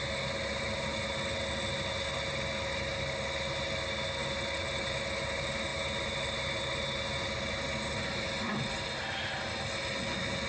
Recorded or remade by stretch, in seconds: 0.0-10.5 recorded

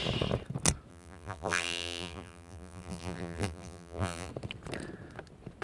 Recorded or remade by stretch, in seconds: 0.0-0.9 recorded; 0.9-4.3 remade; 4.3-5.6 recorded